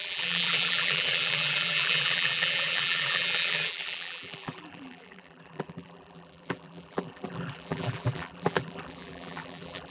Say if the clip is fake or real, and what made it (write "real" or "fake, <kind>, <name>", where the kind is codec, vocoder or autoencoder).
fake, vocoder, BigVGAN v2